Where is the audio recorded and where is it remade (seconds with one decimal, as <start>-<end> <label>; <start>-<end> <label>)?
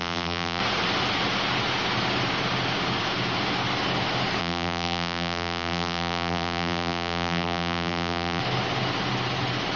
0.0-0.6 remade; 0.6-4.4 recorded; 4.4-8.4 remade; 8.4-9.8 recorded